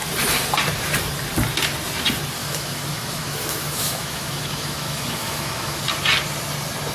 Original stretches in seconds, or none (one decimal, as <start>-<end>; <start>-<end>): 0.0-2.4; 5.8-6.9